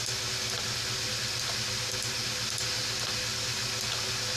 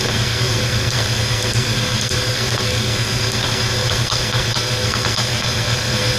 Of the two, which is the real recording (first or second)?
first